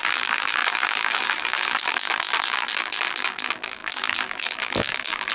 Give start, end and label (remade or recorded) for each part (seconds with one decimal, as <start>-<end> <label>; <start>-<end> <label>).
0.0-5.3 remade